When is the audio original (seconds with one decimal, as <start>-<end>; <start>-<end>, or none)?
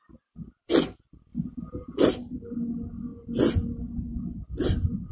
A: 0.0-5.1